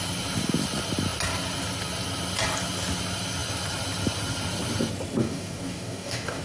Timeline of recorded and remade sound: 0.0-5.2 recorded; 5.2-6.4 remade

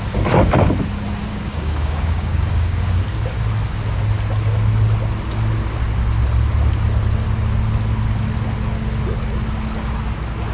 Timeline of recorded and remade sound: 0.0-1.3 recorded; 1.3-2.9 remade; 2.9-10.5 recorded

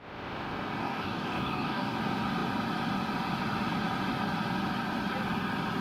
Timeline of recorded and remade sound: 0.0-0.8 recorded; 0.8-2.0 remade; 2.0-5.8 recorded

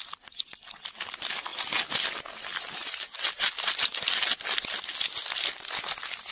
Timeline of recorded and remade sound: 0.0-6.3 recorded

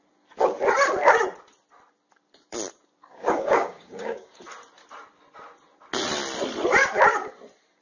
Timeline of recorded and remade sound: 0.0-3.0 recorded; 3.0-4.4 remade; 4.4-7.8 recorded

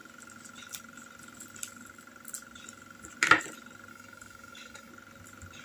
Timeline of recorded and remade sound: 0.0-3.9 recorded; 3.9-4.9 remade; 4.9-5.6 recorded